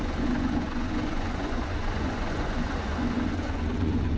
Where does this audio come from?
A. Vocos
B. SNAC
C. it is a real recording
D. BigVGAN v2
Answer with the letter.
A